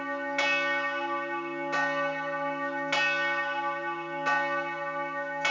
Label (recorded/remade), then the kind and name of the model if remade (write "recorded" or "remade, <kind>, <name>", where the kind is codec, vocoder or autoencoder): recorded